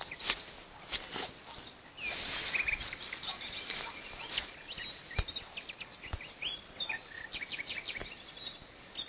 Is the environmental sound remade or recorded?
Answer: recorded